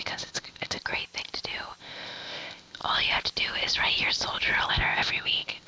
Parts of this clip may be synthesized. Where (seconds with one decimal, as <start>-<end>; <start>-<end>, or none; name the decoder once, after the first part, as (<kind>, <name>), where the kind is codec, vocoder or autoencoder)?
0.0-0.8 (codec, ZipCodec); 1.8-2.8; 4.7-5.7